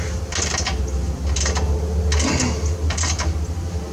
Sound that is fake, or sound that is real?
real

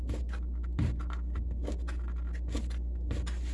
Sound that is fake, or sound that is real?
real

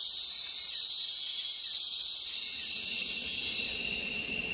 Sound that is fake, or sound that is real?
real